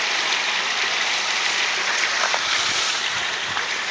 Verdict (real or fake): real